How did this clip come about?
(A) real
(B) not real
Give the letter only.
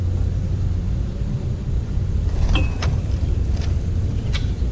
B